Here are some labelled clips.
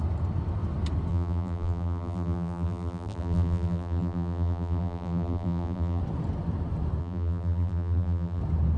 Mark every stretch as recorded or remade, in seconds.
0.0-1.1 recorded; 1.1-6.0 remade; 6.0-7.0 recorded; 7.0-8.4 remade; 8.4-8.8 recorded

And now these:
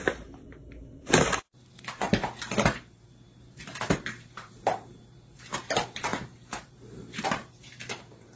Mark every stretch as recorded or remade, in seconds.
0.0-8.4 remade

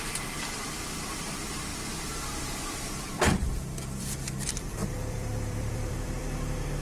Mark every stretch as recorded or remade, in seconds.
0.0-1.7 remade; 1.7-2.6 recorded; 2.6-6.8 remade